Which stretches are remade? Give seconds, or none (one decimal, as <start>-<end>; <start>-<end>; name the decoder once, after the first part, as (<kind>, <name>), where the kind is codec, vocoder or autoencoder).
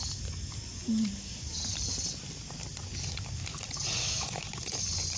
4.0-4.8 (autoencoder, DAC-VAE)